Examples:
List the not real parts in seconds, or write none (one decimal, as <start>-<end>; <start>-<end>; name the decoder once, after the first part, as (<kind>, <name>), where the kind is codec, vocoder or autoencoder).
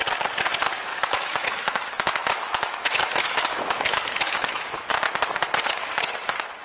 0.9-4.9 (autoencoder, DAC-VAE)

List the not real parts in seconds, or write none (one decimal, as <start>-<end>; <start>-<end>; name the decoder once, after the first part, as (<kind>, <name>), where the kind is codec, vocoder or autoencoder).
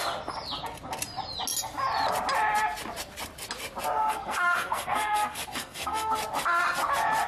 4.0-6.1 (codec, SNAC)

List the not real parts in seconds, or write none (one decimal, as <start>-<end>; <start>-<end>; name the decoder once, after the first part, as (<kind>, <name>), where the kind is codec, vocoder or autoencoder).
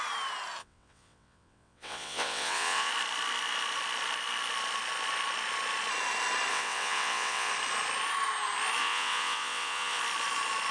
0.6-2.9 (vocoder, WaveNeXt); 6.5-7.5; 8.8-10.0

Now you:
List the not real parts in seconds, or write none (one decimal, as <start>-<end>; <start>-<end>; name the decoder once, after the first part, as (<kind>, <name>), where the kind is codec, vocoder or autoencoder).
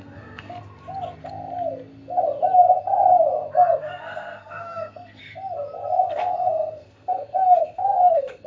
0.0-0.6 (codec, SNAC); 3.8-5.2; 6.1-8.5